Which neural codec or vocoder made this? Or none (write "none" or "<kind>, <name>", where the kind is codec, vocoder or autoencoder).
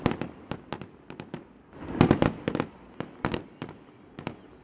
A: none